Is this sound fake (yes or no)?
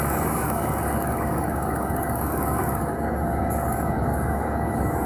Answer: yes